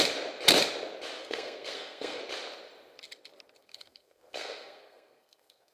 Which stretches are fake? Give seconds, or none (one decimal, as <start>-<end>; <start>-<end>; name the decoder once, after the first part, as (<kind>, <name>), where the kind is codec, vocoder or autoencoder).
1.2-2.2 (codec, SNAC); 3.6-5.7